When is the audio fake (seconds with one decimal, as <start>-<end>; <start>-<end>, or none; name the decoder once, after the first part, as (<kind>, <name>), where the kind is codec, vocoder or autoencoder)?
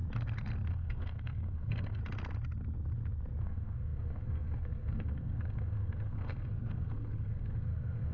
0.7-2.0 (codec, SNAC); 3.4-8.1